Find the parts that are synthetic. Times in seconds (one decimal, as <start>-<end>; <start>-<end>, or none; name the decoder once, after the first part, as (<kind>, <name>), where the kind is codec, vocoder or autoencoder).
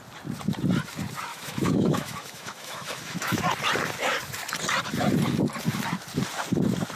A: 1.3-3.4 (autoencoder, DAC-VAE)